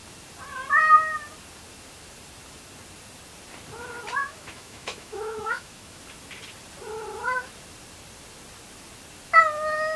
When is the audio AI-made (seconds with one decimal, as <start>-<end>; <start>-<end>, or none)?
4.2-6.0